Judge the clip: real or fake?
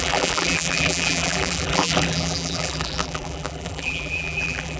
fake